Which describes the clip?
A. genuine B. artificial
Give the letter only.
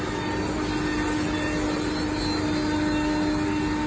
A